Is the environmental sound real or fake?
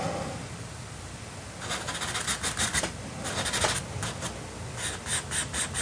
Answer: real